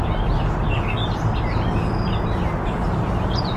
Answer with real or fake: real